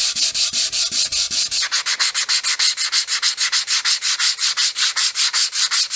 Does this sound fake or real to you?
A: real